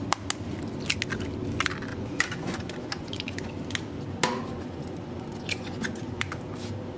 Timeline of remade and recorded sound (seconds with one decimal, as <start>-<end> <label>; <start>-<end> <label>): 0.0-1.9 recorded; 1.9-3.5 remade; 3.5-4.5 recorded; 4.5-6.4 remade; 6.4-7.0 recorded